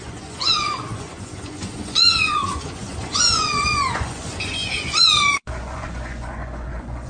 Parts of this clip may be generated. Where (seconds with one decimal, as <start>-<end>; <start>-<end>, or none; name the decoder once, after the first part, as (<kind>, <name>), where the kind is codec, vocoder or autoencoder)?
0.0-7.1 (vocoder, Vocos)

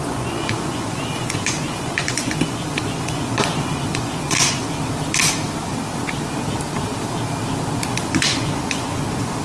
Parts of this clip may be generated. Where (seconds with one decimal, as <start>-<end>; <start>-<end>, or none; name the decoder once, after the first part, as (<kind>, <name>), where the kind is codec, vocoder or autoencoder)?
0.0-4.6 (vocoder, Vocos); 7.9-9.4

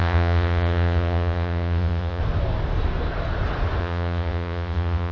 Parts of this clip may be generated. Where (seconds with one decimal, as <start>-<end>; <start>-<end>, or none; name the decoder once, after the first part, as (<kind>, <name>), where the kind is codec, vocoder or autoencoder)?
0.0-2.2 (vocoder, Vocos); 3.8-5.1

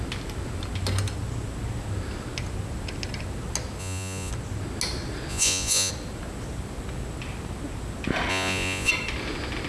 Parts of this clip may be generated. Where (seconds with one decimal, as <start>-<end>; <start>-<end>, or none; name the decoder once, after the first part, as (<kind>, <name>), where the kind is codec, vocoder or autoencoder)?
3.8-4.3 (vocoder, Vocos); 5.3-5.9; 8.3-8.9

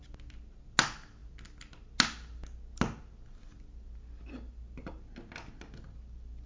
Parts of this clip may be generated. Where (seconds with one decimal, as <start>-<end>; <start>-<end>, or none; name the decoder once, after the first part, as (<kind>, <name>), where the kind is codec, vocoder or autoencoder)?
none

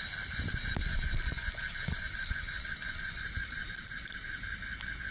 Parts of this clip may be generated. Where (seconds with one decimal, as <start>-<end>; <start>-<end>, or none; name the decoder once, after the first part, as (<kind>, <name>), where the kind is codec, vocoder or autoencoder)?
0.9-3.2 (vocoder, Vocos)